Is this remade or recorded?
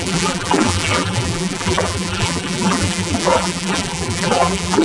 remade